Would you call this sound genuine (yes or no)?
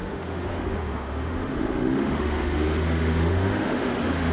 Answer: no